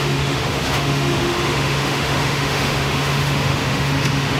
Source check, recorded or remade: remade